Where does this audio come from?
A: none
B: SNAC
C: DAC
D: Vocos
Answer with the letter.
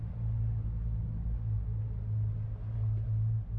A